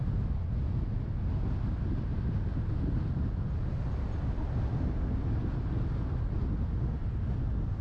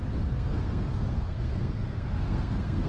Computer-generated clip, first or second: second